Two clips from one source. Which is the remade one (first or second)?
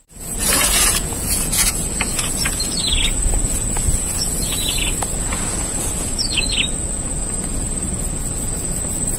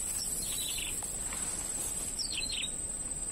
first